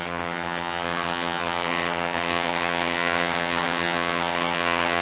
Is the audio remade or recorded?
remade